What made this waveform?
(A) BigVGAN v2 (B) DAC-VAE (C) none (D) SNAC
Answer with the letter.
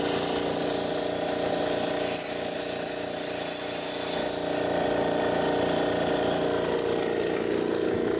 C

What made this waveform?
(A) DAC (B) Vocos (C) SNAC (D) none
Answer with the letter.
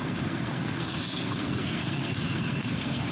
C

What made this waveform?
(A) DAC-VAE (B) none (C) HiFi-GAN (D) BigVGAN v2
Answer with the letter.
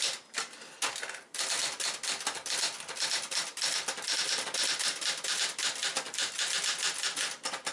B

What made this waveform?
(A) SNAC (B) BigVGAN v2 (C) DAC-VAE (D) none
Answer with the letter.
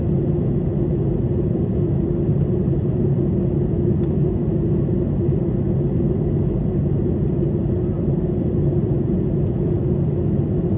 D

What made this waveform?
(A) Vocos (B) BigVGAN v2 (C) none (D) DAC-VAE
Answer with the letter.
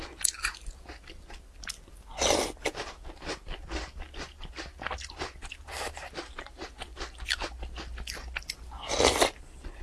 C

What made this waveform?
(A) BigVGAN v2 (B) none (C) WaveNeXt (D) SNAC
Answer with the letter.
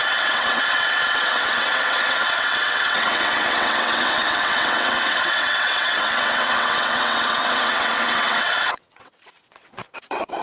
C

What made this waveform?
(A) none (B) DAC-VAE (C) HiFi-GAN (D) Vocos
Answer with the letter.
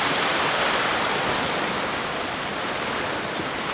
A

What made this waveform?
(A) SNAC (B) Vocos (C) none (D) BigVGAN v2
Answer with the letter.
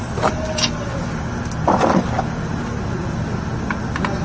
C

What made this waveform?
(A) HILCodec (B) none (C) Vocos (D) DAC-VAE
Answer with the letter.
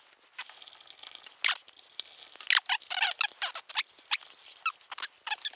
B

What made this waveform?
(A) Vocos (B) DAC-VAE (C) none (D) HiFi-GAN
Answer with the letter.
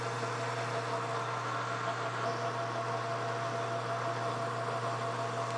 C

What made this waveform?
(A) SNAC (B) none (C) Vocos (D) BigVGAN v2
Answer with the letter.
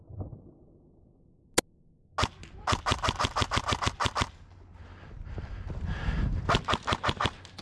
B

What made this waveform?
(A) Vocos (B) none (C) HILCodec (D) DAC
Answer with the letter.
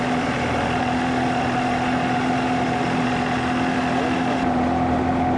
B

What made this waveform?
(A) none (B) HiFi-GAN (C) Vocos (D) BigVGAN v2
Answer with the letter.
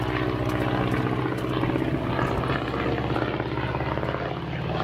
A